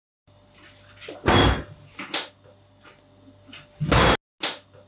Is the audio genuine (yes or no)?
yes